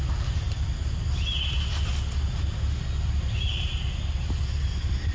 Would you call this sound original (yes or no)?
yes